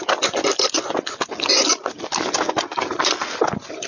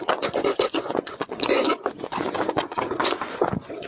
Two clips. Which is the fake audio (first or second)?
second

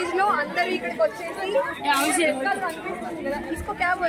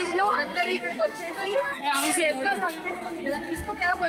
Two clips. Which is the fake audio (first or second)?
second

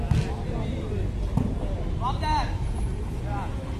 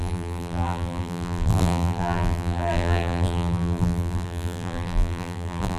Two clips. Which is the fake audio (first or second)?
second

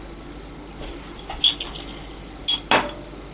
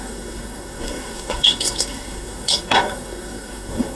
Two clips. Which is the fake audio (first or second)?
second